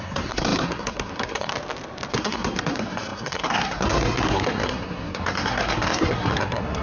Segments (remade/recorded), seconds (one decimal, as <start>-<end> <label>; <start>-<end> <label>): 0.0-1.5 remade; 1.5-2.1 recorded; 2.1-6.8 remade